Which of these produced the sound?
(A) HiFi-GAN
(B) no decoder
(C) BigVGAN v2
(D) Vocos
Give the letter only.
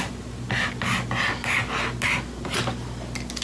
B